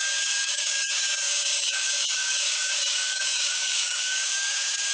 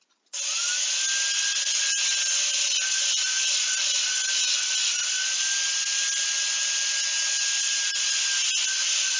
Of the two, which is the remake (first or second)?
first